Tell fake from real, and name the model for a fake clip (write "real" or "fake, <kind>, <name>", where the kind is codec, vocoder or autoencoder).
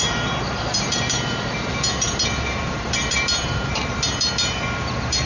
fake, vocoder, BigVGAN v2